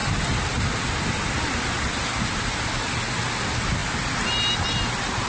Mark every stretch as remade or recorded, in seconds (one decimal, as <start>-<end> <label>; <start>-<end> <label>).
0.0-5.3 recorded